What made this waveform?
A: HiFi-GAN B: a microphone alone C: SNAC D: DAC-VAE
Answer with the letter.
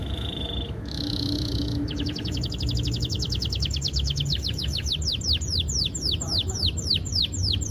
D